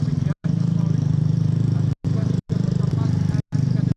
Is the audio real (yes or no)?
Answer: no